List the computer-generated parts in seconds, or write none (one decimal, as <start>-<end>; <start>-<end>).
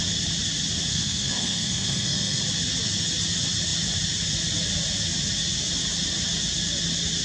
0.9-2.4